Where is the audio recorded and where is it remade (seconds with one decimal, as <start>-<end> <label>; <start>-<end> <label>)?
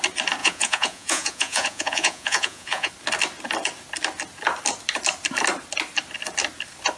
0.0-0.4 recorded; 0.4-2.9 remade; 2.9-7.0 recorded